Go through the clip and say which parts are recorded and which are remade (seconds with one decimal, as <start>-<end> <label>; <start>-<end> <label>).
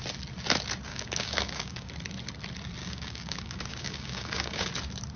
0.0-0.9 recorded; 0.9-1.9 remade; 1.9-2.8 recorded; 2.8-4.7 remade; 4.7-5.2 recorded